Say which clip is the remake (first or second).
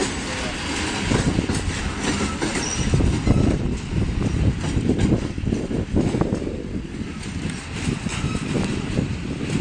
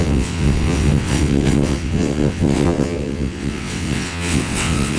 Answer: second